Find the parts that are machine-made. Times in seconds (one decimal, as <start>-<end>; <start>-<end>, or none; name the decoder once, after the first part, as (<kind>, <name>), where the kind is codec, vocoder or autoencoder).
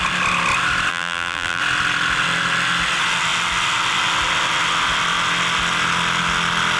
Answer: 0.9-1.6 (vocoder, BigVGAN v2)